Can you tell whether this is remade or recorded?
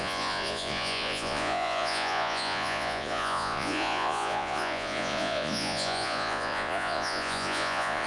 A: remade